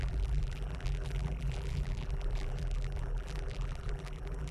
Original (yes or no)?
no